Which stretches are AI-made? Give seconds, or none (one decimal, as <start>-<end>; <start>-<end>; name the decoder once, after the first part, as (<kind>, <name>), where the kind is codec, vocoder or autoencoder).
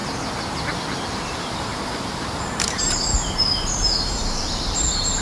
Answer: 1.1-5.2 (vocoder, BigVGAN v2)